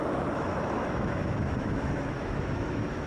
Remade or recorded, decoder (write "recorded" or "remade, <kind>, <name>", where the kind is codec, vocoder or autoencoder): remade, autoencoder, DAC-VAE